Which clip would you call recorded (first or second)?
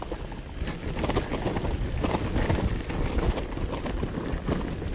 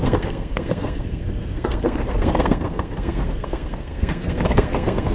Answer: first